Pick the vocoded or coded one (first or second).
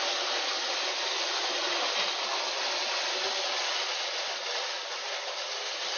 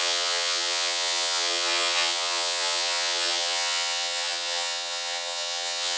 second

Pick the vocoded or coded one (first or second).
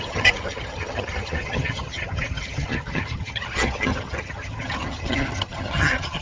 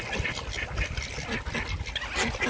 first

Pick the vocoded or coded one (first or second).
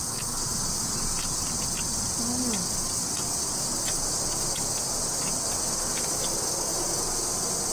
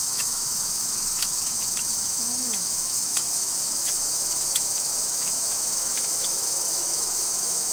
second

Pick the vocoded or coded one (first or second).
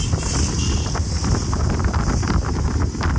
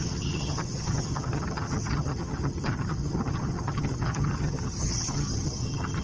second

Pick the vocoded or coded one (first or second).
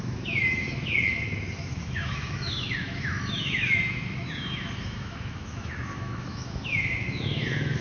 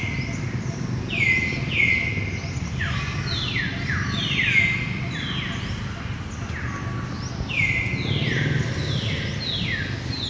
first